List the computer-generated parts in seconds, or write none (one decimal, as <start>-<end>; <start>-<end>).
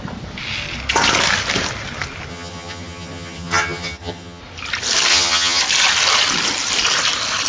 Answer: 2.3-4.4; 5.1-5.6